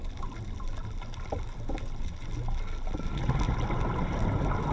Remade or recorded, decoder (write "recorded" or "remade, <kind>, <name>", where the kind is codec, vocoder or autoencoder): recorded